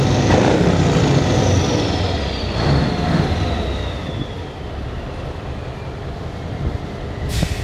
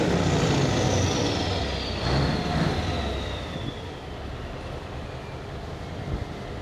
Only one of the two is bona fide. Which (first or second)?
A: second